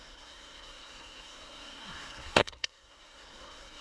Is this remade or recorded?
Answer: remade